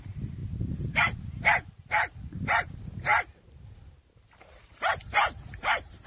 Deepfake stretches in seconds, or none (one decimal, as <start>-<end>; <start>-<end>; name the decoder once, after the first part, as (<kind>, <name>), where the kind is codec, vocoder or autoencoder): 0.0-3.1 (vocoder, BigVGAN v2); 4.4-6.1